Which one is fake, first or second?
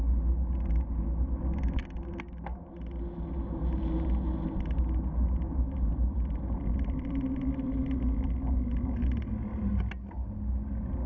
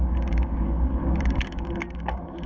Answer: second